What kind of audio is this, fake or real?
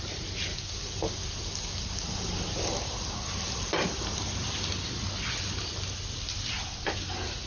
real